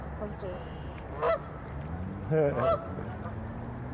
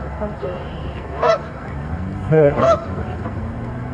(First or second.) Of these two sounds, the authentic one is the first